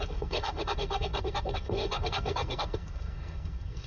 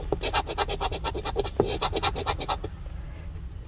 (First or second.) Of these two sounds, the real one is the second